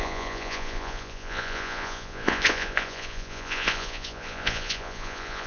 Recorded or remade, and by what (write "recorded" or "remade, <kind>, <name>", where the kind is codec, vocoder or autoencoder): remade, vocoder, Vocos